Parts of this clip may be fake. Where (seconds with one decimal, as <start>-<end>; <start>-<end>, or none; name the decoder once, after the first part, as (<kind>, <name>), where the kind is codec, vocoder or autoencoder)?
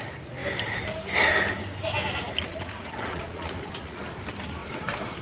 2.5-4.0 (vocoder, Vocos)